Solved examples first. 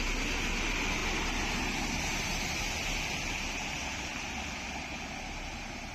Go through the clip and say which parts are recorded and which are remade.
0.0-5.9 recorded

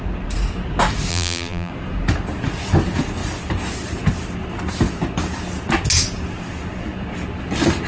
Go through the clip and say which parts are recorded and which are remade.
0.0-1.1 recorded; 1.1-1.7 remade; 1.7-7.9 recorded

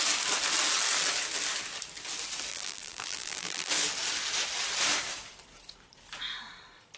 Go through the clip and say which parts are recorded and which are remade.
0.0-2.5 recorded; 2.5-3.7 remade; 3.7-7.0 recorded

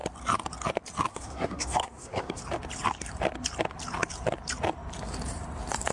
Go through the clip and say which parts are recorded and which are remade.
0.0-1.1 recorded; 1.1-2.4 remade; 2.4-5.9 recorded

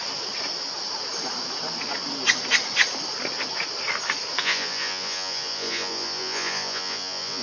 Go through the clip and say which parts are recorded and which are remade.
0.0-4.4 recorded; 4.4-7.4 remade

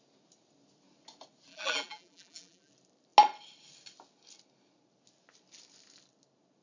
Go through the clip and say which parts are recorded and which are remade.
0.0-1.5 recorded; 1.5-2.7 remade; 2.7-6.6 recorded

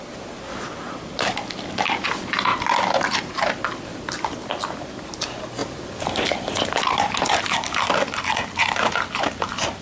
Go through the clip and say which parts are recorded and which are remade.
0.0-2.5 recorded; 2.5-3.3 remade; 3.3-3.9 recorded; 3.9-5.0 remade; 5.0-5.6 recorded; 5.6-7.0 remade; 7.0-9.8 recorded